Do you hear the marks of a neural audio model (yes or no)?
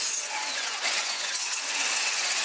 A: yes